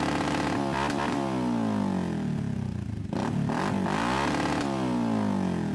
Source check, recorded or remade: recorded